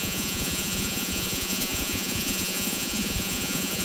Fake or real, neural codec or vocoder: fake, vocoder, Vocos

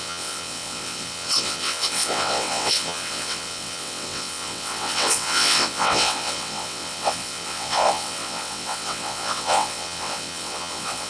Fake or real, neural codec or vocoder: fake, vocoder, WaveNeXt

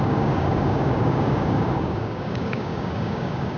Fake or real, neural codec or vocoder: fake, codec, DAC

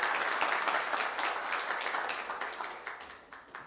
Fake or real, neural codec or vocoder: real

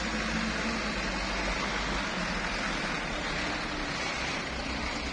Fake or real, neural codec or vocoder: real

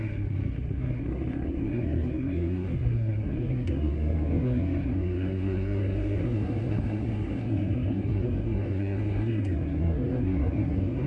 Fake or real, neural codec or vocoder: fake, codec, SNAC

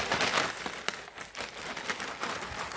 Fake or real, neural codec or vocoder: real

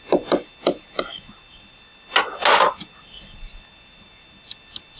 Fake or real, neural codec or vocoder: real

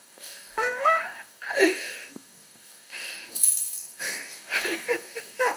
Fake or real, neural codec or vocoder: fake, codec, DAC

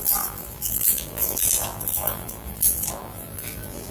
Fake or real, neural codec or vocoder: fake, vocoder, BigVGAN v2